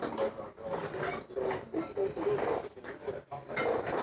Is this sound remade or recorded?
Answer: recorded